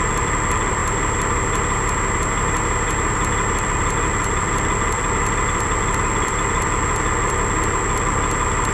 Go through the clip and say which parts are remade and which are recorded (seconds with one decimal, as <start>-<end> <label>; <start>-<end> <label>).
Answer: 0.0-0.8 remade; 0.8-3.6 recorded; 3.6-8.7 remade